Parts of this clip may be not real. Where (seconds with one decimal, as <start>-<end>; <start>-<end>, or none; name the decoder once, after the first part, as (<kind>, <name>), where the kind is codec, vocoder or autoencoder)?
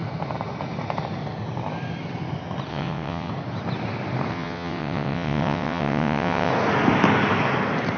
2.7-3.3 (vocoder, WaveNeXt); 4.3-6.5